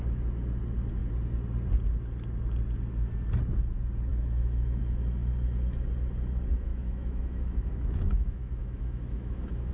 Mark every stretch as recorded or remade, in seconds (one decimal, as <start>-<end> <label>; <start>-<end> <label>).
0.0-4.1 recorded; 4.1-4.8 remade; 4.8-6.7 recorded; 6.7-9.7 remade